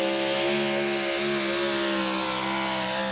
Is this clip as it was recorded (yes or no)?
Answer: yes